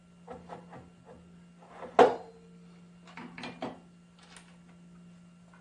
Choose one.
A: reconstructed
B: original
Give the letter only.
B